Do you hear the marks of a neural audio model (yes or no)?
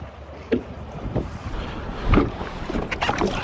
no